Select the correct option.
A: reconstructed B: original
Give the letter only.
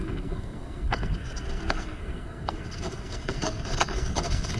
A